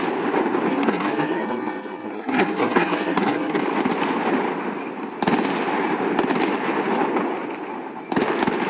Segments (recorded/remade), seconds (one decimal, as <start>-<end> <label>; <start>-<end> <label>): 0.0-0.7 recorded; 0.7-3.6 remade; 3.6-8.7 recorded